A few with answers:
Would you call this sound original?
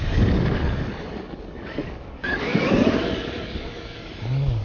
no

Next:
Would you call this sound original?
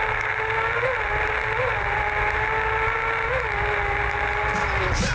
yes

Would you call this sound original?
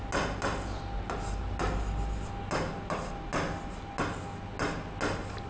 yes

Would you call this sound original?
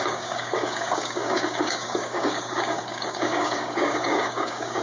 no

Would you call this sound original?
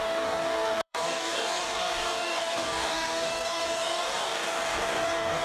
no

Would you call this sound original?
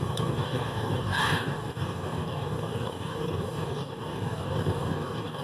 no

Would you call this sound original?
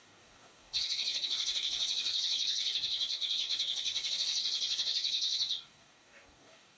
no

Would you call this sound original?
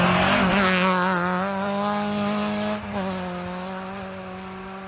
yes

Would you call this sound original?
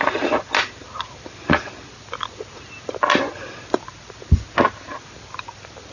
yes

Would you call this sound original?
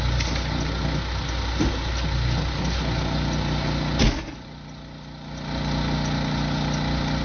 yes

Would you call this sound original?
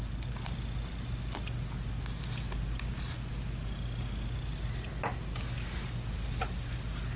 yes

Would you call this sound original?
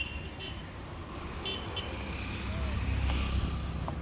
yes